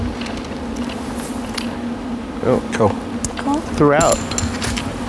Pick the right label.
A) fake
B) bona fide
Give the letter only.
B